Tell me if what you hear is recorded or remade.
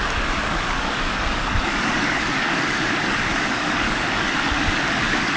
remade